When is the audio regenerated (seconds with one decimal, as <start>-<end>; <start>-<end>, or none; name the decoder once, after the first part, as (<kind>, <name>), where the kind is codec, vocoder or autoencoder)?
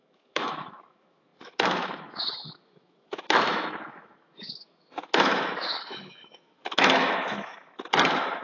0.0-8.4 (autoencoder, DAC-VAE)